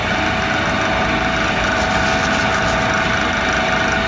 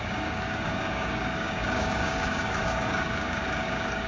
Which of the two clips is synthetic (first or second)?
second